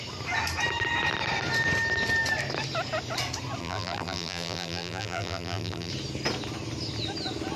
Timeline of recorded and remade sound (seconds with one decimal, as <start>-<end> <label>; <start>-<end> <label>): 0.0-3.6 recorded; 3.6-5.9 remade; 5.9-7.6 recorded